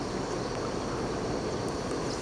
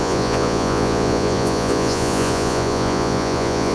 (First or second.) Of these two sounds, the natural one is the first